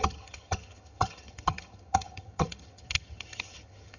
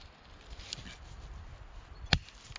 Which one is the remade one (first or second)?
first